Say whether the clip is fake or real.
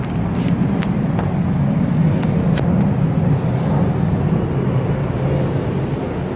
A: real